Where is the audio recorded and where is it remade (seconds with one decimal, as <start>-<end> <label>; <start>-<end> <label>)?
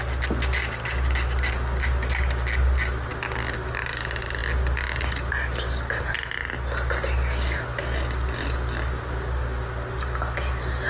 0.0-10.9 recorded